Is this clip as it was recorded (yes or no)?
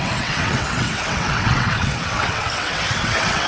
no